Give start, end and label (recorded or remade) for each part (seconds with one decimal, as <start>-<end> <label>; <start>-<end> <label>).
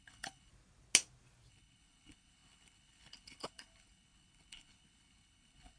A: 0.0-0.5 remade; 0.5-1.5 recorded; 1.5-5.8 remade